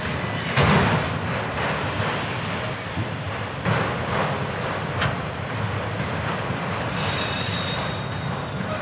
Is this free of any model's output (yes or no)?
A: yes